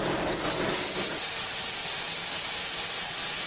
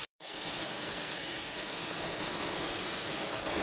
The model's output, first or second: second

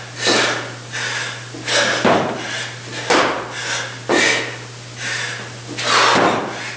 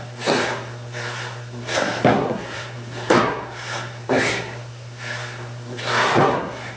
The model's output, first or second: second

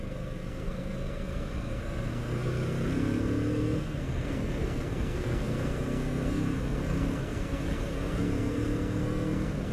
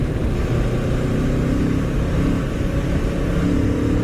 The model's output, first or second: first